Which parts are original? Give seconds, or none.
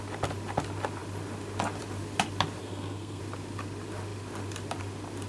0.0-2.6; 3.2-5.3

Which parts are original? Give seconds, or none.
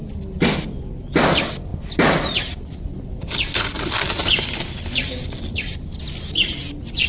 0.0-1.7; 6.0-7.1